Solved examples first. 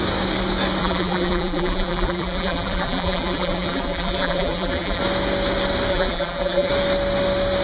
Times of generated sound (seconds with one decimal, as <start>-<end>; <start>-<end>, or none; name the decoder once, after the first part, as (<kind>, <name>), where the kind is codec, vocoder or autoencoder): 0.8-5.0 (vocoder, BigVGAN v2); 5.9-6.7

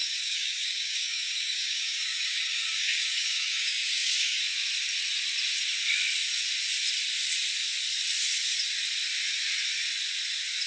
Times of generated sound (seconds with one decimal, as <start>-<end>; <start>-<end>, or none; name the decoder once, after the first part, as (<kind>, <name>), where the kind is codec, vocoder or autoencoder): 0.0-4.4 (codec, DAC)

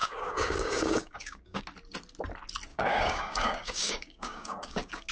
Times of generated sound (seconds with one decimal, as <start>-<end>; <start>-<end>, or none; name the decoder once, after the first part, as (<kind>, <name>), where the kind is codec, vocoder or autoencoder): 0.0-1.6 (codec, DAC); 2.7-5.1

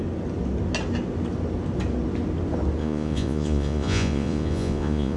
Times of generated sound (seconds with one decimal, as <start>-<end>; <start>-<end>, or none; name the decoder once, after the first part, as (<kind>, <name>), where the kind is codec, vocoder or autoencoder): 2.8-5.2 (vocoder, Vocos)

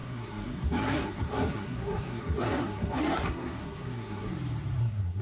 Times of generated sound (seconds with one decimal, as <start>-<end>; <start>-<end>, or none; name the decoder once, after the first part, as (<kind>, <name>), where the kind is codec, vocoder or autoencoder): 0.0-4.3 (codec, SNAC); 4.8-5.2

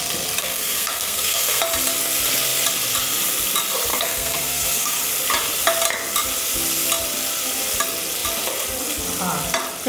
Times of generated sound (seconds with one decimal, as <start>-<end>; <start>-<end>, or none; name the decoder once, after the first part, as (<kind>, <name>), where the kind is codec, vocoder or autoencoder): 0.4-1.6 (codec, SNAC); 3.9-5.0

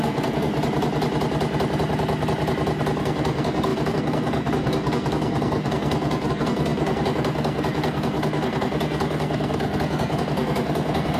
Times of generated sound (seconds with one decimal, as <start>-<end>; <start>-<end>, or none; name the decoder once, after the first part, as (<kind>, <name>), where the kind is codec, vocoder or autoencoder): 0.0-0.5 (codec, SNAC); 3.0-11.2